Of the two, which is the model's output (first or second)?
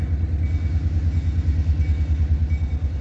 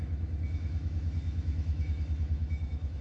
second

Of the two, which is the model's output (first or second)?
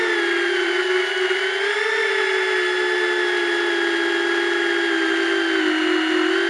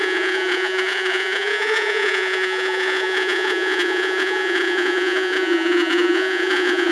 second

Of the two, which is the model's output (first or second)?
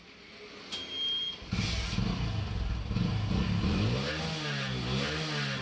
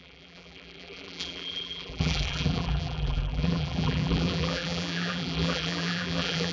second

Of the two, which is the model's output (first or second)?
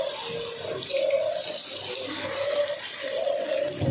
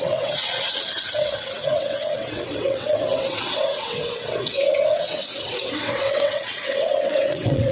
second